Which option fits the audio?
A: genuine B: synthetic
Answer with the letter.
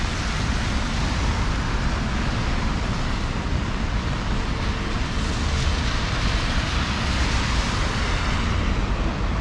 A